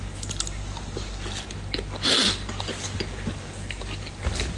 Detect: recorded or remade recorded